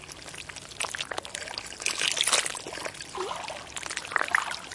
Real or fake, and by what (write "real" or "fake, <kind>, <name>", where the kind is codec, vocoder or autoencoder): real